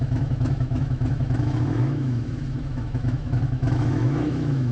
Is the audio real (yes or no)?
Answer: no